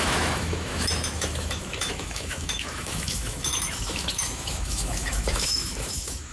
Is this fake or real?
fake